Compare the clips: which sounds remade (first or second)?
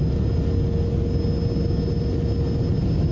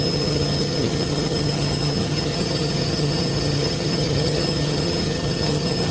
second